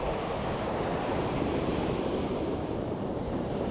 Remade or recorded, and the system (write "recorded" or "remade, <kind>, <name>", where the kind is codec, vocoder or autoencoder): remade, vocoder, BigVGAN v2